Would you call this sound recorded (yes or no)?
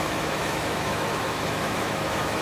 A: no